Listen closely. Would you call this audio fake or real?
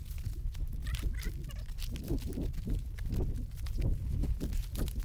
real